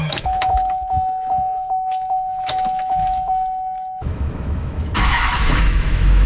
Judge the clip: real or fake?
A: fake